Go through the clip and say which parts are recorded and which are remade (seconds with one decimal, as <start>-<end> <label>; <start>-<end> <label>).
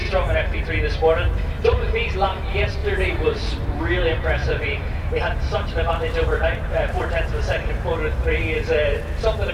0.0-4.4 recorded; 4.4-7.0 remade; 7.0-9.5 recorded